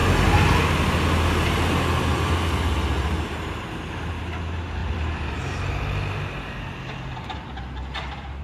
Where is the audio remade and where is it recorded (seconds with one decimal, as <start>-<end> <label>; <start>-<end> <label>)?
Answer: 0.0-8.4 recorded